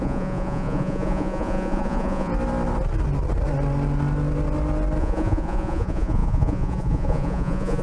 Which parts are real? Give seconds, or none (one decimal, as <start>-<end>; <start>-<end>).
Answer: 2.3-5.0